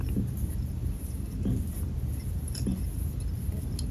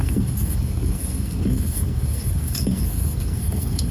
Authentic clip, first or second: first